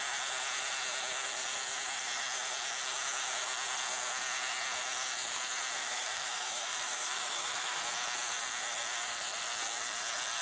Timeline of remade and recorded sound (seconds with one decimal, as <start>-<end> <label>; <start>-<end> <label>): 0.0-5.8 recorded; 5.8-7.8 remade; 7.8-10.4 recorded